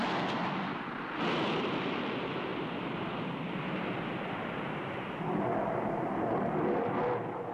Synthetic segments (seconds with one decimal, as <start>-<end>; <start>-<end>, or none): 2.5-7.0